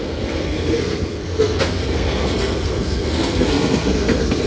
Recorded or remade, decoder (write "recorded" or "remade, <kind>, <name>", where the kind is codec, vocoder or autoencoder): remade, codec, SNAC